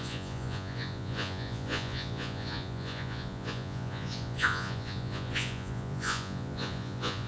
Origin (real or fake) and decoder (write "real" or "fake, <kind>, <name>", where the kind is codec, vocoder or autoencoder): fake, vocoder, Vocos